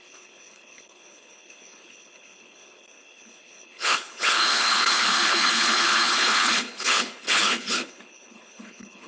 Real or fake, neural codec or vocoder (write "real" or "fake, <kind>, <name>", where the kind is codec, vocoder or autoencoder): fake, codec, HILCodec